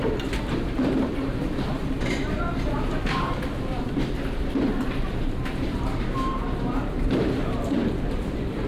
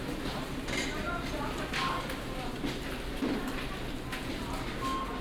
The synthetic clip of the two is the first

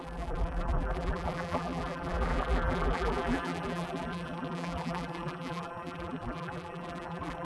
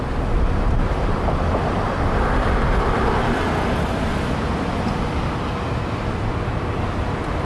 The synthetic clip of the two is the first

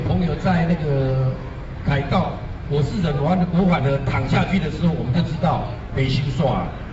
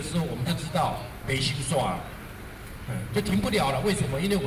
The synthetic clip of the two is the first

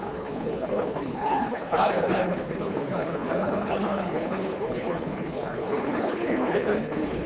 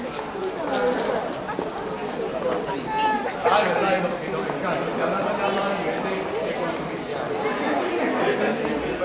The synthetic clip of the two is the first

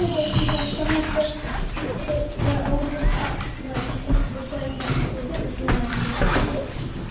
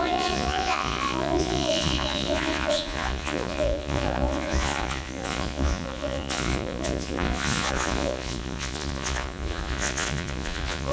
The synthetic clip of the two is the second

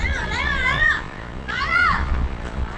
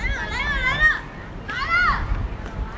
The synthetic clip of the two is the first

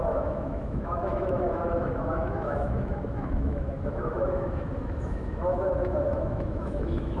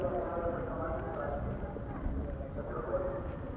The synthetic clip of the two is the first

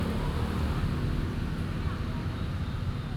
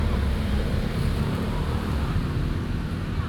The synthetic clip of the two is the second